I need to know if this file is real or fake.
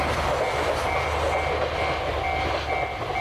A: real